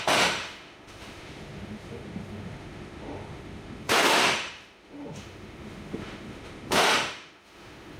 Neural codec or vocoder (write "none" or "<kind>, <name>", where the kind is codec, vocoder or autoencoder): autoencoder, DAC-VAE